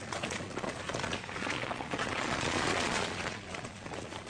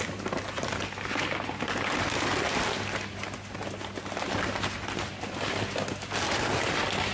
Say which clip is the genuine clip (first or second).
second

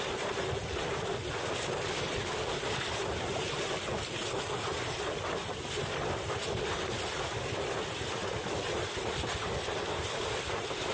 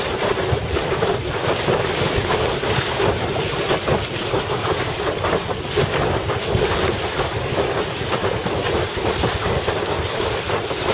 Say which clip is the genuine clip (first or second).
first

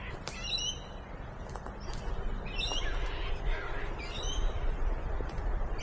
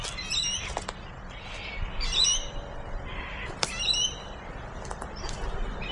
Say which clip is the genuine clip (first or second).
first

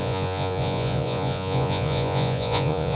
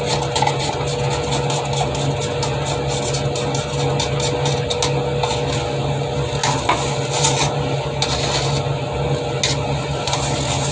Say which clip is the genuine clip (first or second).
second